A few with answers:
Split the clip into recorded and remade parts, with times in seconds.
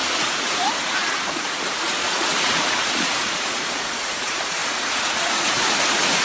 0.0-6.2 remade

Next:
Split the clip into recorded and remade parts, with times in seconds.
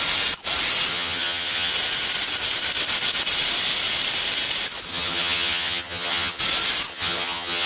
0.0-0.9 recorded; 0.9-1.7 remade; 1.7-4.9 recorded; 4.9-6.4 remade; 6.4-6.9 recorded; 6.9-7.7 remade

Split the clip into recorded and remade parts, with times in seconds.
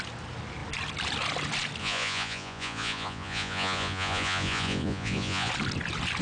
0.0-1.8 recorded; 1.8-5.5 remade; 5.5-6.2 recorded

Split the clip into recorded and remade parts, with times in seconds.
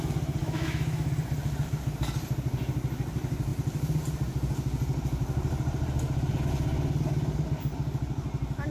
0.0-0.4 recorded; 0.4-1.1 remade; 1.1-8.7 recorded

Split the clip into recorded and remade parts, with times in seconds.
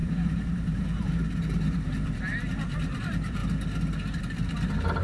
0.0-3.4 remade; 3.4-4.2 recorded; 4.2-5.0 remade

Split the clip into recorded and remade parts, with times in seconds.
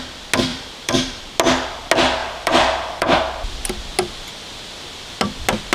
0.0-0.5 recorded; 0.5-1.2 remade; 1.2-2.2 recorded; 2.2-3.2 remade; 3.2-5.7 recorded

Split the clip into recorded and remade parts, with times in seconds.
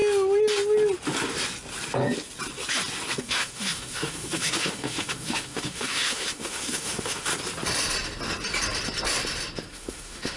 0.0-3.2 recorded; 3.2-7.3 remade; 7.3-9.7 recorded; 9.7-10.4 remade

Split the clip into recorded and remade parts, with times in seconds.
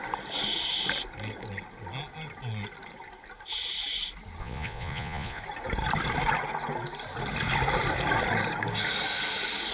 0.0-4.4 recorded; 4.4-5.4 remade; 5.4-9.7 recorded